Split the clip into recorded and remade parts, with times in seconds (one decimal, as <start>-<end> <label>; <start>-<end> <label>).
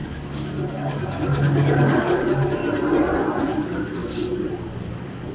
0.0-2.6 remade; 2.6-3.4 recorded; 3.4-5.3 remade